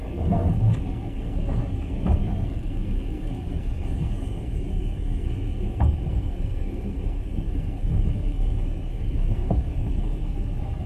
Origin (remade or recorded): remade